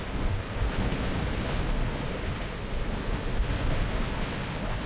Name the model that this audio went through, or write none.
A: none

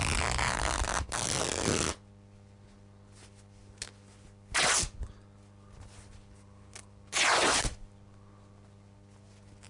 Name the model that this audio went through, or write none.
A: none